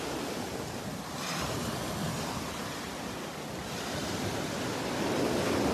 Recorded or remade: recorded